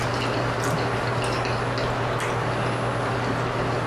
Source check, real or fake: real